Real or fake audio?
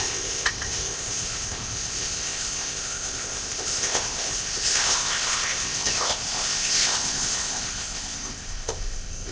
fake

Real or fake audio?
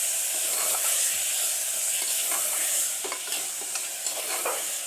real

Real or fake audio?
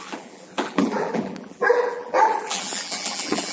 fake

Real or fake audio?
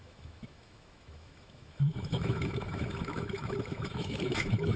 fake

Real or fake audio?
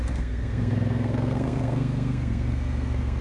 fake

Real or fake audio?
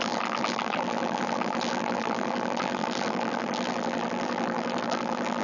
fake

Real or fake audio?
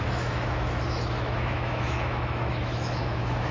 fake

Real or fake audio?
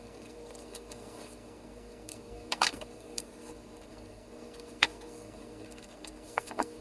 fake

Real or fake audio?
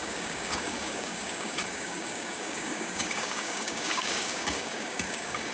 fake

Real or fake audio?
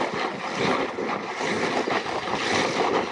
real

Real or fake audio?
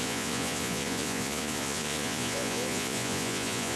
fake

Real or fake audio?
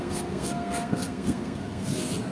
fake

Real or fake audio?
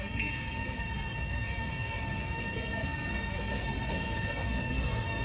fake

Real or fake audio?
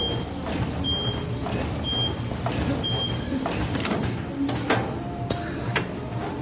real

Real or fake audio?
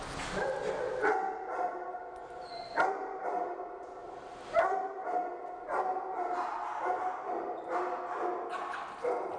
real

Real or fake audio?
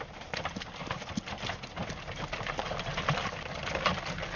real